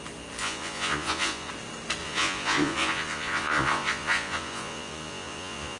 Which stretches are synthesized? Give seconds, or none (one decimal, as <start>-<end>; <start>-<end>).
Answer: 0.4-1.5; 2.0-5.8